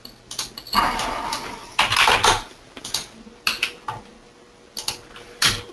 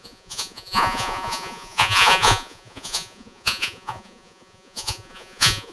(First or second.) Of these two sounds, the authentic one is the first